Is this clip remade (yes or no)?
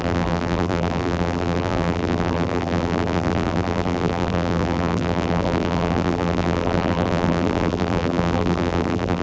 yes